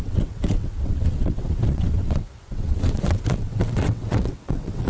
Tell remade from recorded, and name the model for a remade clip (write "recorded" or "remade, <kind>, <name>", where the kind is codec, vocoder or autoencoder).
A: remade, vocoder, WaveNeXt